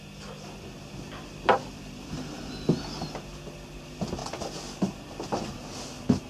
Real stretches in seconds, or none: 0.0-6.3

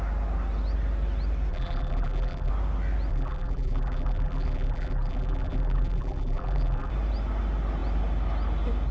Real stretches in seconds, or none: 0.0-1.5; 2.5-3.1; 6.9-8.9

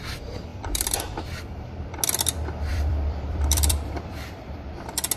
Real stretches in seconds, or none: 0.0-0.5; 1.2-2.7; 4.8-5.2

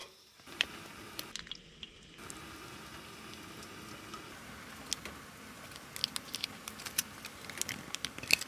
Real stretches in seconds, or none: 0.8-8.5

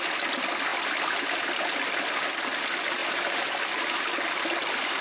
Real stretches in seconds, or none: 0.0-3.0; 3.6-5.0

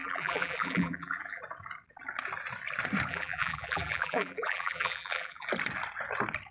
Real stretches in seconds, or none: 1.4-3.1; 5.5-6.5

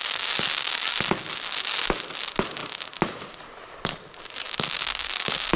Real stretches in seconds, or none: 0.0-5.6

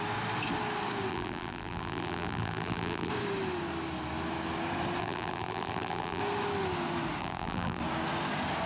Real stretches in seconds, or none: 0.0-1.1; 3.1-5.0; 6.2-7.2; 7.8-8.7